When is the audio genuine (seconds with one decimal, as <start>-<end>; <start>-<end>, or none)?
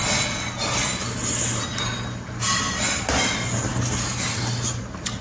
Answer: 0.0-3.7; 4.8-5.2